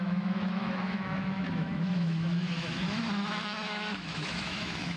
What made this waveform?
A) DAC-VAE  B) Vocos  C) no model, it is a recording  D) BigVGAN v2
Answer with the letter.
A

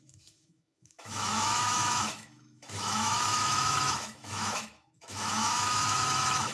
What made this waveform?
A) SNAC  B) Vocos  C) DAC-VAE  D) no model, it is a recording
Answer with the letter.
C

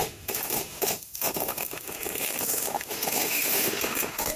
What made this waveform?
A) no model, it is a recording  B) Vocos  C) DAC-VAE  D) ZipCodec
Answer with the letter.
C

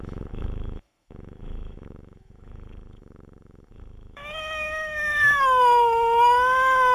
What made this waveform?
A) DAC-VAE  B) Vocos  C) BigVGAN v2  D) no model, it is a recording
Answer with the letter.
A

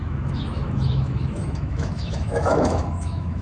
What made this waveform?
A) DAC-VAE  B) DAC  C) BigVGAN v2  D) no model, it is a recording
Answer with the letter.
A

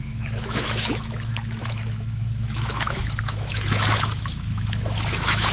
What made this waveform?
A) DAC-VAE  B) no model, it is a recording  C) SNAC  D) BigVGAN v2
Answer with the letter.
A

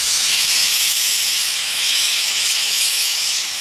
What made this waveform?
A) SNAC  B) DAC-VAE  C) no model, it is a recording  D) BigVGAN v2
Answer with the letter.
B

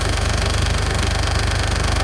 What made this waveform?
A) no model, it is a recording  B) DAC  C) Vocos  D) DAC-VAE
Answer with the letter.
D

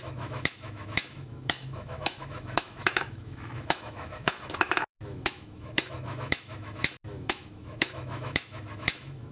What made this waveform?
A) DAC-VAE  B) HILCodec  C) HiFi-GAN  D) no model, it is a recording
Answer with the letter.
A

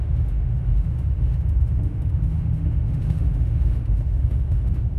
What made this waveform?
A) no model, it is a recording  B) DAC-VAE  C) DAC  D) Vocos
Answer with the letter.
B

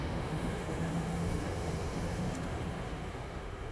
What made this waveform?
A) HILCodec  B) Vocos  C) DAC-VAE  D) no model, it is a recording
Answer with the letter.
C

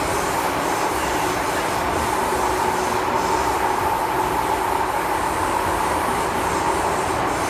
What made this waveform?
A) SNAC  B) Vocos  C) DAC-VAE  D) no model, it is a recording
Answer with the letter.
D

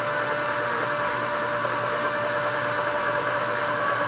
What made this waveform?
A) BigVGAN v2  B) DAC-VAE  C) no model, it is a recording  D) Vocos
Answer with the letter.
B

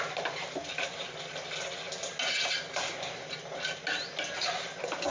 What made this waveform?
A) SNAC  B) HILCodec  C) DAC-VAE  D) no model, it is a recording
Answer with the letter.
D